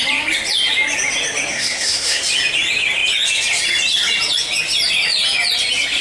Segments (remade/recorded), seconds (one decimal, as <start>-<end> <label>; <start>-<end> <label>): 0.0-1.5 recorded; 1.5-2.2 remade; 2.2-6.0 recorded